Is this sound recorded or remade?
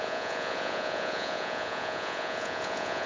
remade